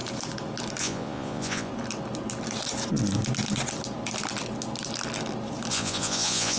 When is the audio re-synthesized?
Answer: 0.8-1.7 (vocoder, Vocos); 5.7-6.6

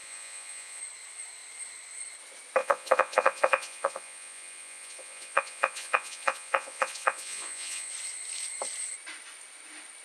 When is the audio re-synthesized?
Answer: 0.0-0.8 (vocoder, Vocos); 2.6-7.9